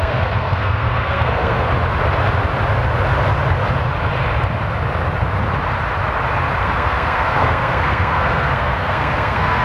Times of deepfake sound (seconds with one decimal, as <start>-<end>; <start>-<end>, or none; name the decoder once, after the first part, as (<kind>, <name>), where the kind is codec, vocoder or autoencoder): 0.0-1.7 (codec, SNAC); 6.6-9.6